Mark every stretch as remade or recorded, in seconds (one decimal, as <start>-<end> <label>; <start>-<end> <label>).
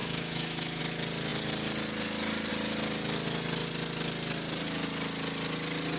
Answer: 0.0-0.8 remade; 0.8-6.0 recorded